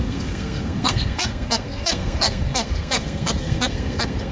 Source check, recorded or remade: remade